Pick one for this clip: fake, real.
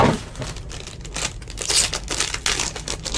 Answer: real